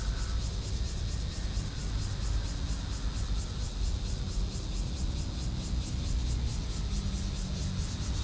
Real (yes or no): yes